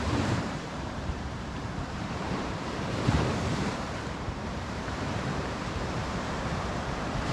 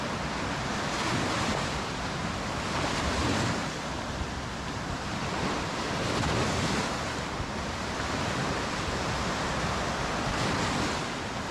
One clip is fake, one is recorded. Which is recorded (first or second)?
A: second